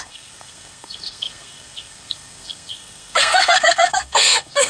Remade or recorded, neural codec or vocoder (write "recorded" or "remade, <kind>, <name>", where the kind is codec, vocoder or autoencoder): remade, codec, SNAC